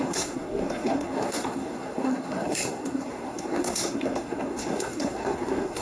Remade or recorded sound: remade